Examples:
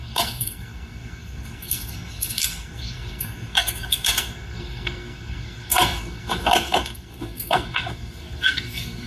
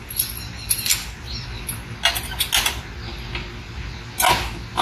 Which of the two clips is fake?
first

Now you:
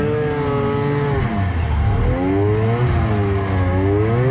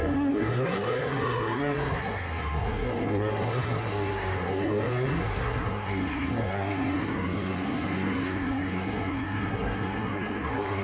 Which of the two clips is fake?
second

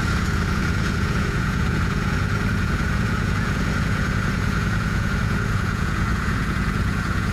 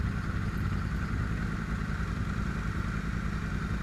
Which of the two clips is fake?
first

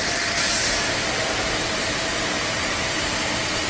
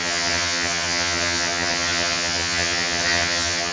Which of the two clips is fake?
second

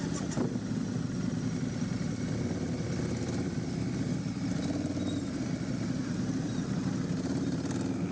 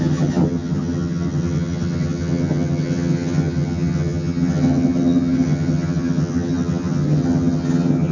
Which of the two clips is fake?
second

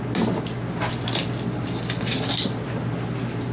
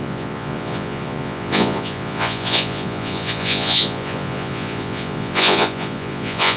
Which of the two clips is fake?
second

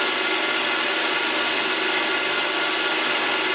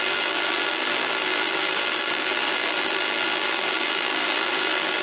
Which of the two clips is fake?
second